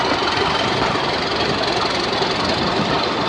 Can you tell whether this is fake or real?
real